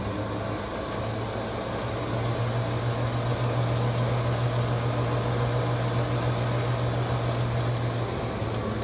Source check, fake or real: real